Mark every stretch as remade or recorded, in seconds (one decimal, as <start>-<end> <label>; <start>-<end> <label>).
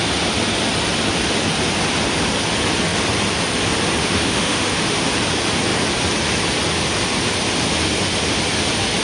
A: 0.0-4.0 recorded; 4.0-5.1 remade; 5.1-9.0 recorded